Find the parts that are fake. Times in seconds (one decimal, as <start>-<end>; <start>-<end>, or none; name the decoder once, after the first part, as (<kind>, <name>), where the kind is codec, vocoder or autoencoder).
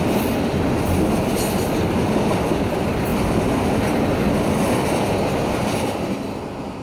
none